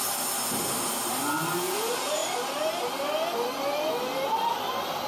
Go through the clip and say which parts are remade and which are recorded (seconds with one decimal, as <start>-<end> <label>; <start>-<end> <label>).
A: 0.0-5.1 recorded